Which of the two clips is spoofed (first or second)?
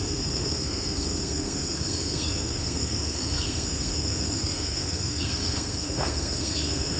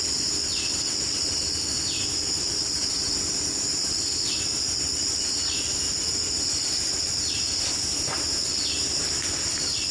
first